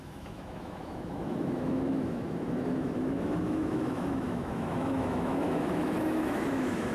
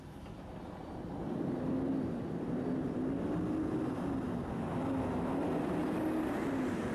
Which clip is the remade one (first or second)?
first